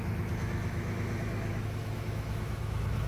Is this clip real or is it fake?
fake